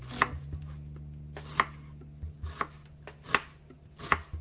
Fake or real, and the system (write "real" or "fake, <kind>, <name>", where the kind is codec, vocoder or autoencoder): real